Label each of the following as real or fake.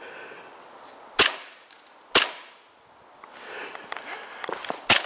real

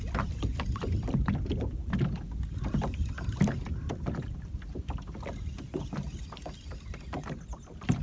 real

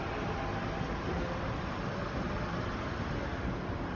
real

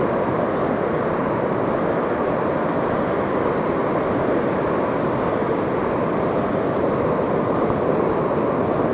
real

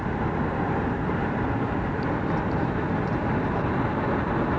real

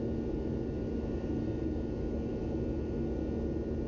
real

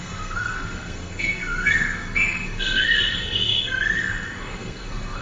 fake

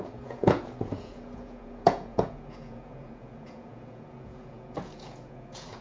fake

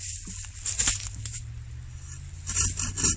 real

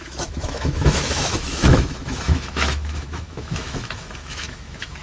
fake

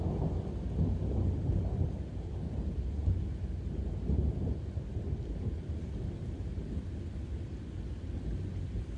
real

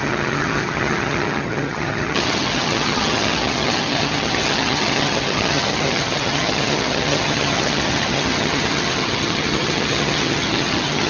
fake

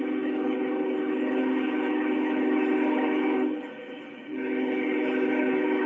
fake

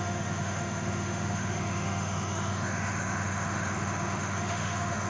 fake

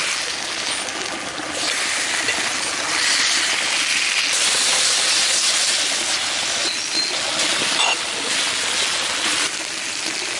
real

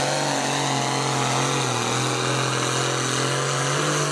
real